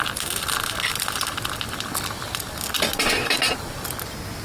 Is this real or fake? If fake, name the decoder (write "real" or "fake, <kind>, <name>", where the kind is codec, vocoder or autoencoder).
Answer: real